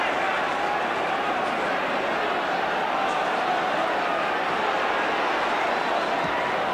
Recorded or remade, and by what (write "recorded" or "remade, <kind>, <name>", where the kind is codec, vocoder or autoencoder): recorded